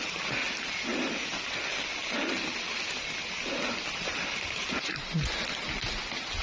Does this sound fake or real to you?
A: real